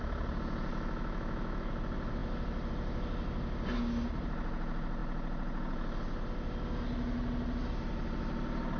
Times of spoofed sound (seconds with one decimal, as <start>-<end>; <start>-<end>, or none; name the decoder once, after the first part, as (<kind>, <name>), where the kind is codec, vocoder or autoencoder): 0.7-1.7 (autoencoder, DAC-VAE)